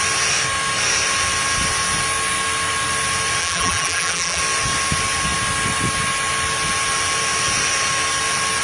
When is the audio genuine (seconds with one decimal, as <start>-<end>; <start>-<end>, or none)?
0.0-3.4; 4.4-8.6